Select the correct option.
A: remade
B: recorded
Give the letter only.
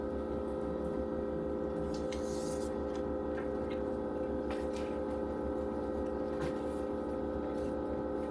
B